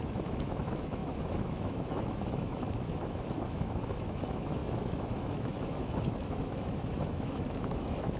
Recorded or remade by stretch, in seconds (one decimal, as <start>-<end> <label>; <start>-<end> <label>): 0.0-8.2 remade